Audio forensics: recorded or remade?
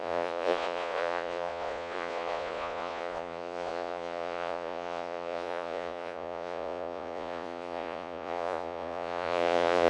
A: remade